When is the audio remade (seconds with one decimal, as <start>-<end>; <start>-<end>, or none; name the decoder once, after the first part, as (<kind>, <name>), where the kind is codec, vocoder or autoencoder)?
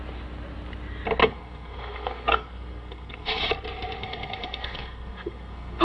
1.2-3.4 (codec, SNAC); 4.0-5.8